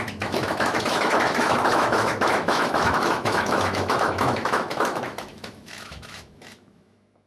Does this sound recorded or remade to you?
remade